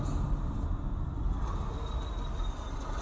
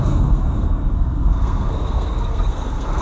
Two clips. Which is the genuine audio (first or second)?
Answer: first